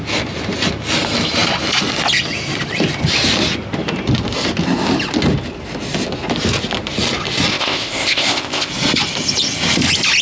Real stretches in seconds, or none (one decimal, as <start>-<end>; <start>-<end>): 0.0-7.5; 8.7-10.2